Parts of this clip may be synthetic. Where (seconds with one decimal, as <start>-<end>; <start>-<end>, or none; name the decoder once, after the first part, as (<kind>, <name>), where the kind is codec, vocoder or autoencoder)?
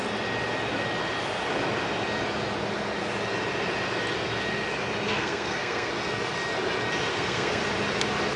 5.1-5.9 (codec, SNAC); 7.1-7.6